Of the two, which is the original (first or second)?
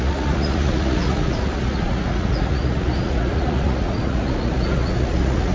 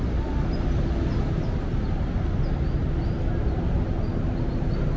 second